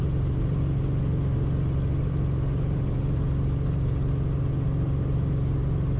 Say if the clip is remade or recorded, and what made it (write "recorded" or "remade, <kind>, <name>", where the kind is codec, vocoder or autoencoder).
recorded